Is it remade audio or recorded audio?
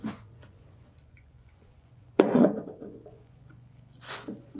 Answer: remade